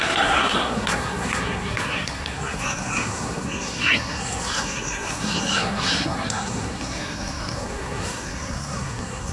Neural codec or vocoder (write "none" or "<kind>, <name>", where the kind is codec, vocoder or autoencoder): codec, SNAC